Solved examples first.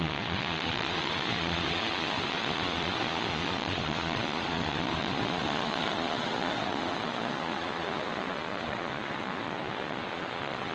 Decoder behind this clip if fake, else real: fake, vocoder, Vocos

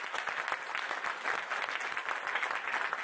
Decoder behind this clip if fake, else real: real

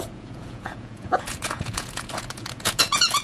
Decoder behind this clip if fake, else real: fake, vocoder, Vocos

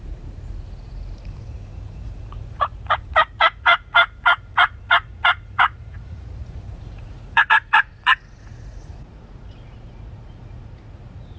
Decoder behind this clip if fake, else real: fake, vocoder, Vocos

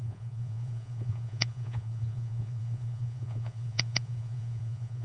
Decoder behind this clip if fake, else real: fake, vocoder, Vocos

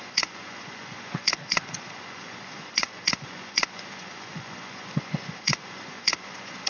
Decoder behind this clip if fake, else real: fake, vocoder, Vocos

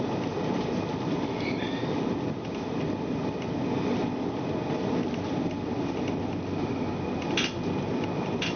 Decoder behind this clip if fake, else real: real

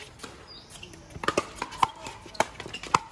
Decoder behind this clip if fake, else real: real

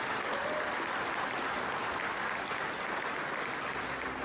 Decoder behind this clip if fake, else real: real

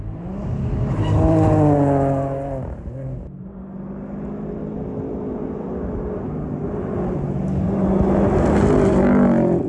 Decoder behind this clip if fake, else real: real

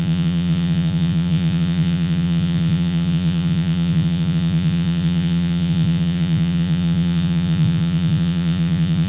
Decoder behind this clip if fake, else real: fake, vocoder, Vocos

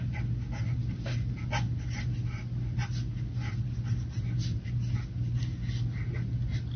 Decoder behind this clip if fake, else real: real